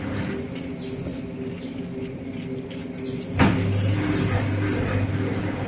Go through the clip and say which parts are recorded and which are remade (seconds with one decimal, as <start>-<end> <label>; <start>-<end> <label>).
0.0-5.7 recorded